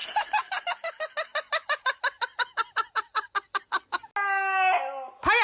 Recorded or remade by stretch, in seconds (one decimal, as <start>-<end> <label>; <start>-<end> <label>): 0.0-5.4 recorded